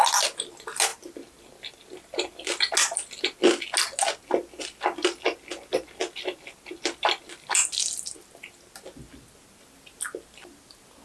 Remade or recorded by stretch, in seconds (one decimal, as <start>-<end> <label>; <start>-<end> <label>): 0.0-11.0 recorded

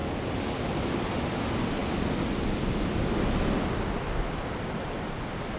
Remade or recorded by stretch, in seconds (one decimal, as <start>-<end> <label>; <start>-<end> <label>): 0.0-5.6 recorded

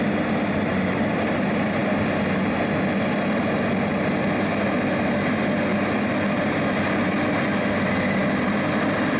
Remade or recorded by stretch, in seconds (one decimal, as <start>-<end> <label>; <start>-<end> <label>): 0.0-9.2 recorded

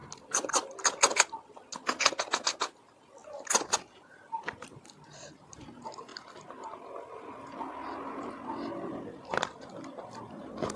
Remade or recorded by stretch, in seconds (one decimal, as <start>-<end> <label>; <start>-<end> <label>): 0.0-10.8 recorded

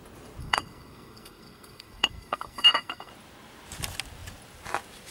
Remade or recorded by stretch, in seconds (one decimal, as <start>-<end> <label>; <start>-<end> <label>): 0.0-0.4 recorded; 0.4-3.1 remade; 3.1-5.1 recorded